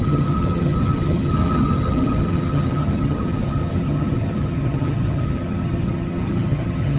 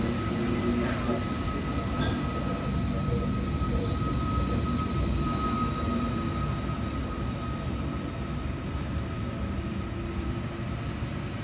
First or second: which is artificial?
first